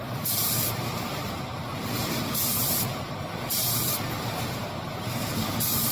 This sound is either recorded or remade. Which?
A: remade